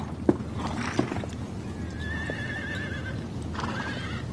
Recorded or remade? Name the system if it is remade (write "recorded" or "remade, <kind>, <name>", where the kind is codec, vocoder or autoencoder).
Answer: recorded